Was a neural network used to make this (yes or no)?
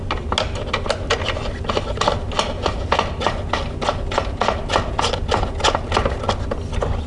no